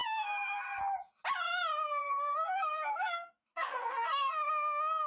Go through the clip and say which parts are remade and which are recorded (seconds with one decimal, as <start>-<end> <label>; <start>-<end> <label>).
0.0-0.8 remade; 0.8-2.0 recorded; 2.0-4.5 remade; 4.5-5.1 recorded